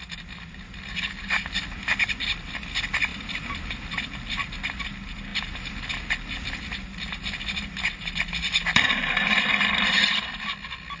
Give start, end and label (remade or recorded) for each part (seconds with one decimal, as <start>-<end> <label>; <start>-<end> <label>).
0.0-11.0 recorded